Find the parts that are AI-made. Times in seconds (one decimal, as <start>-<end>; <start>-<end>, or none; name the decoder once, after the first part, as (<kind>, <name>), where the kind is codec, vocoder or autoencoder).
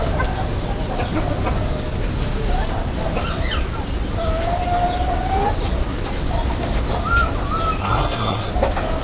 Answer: 7.8-8.5 (codec, SNAC)